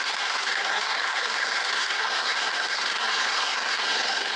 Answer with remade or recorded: remade